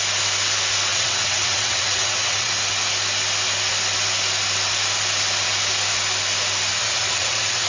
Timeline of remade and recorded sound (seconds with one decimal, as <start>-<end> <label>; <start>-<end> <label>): 0.0-0.9 recorded; 0.9-2.6 remade; 2.6-6.8 recorded; 6.8-7.7 remade